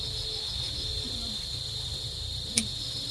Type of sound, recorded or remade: recorded